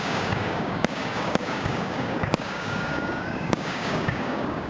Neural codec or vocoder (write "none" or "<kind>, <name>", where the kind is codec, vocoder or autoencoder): codec, DAC